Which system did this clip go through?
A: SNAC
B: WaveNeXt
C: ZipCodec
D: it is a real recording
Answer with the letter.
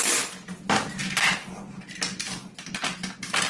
D